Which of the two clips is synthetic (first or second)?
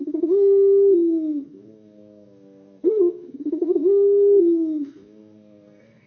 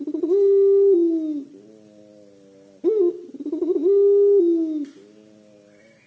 first